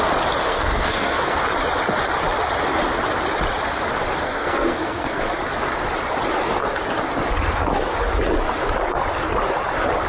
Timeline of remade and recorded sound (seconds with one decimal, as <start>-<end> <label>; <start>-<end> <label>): 0.0-0.4 recorded; 0.4-1.4 remade; 1.4-4.2 recorded; 4.2-5.3 remade; 5.3-10.1 recorded

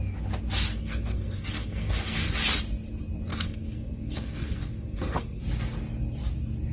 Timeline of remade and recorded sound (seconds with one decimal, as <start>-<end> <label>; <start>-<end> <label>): 0.0-0.7 recorded; 0.7-2.3 remade; 2.3-3.3 recorded; 3.3-5.4 remade; 5.4-6.7 recorded

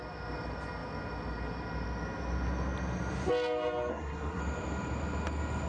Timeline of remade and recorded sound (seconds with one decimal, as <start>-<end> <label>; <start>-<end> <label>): 0.0-3.9 recorded; 3.9-4.4 remade; 4.4-5.7 recorded

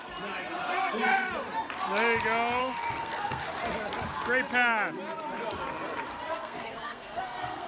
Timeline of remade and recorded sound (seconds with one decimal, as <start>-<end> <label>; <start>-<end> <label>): 0.0-2.6 recorded; 2.6-3.5 remade; 3.5-6.3 recorded; 6.3-7.7 remade

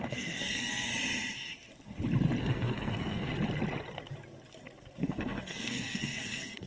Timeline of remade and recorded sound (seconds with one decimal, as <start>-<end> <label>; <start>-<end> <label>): 0.0-0.9 remade; 0.9-2.4 recorded; 2.4-3.3 remade; 3.3-5.0 recorded; 5.0-6.7 remade

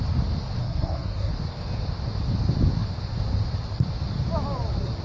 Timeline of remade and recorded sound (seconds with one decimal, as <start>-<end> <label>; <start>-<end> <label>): 0.0-0.6 recorded; 0.6-1.3 remade; 1.3-5.0 recorded

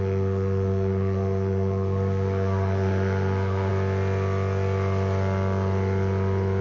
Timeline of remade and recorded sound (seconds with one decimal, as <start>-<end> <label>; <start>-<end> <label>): 0.0-3.7 remade; 3.7-6.6 recorded

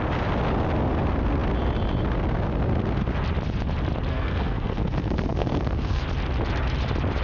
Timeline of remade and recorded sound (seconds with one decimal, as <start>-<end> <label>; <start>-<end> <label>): 0.0-4.1 recorded; 4.1-6.0 remade; 6.0-7.2 recorded